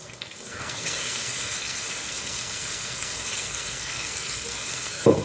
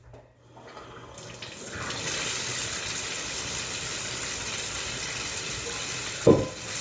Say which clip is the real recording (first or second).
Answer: second